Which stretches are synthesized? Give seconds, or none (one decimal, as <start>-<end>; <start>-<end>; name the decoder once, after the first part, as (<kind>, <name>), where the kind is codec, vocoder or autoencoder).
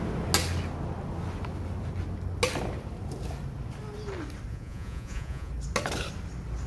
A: 4.5-5.5 (vocoder, Vocos)